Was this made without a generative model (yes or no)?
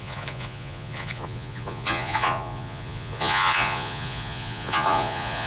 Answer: no